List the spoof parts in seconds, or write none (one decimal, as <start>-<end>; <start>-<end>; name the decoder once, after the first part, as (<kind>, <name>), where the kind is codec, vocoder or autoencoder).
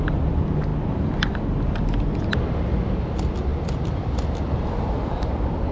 0.0-0.7 (vocoder, BigVGAN v2); 3.0-5.7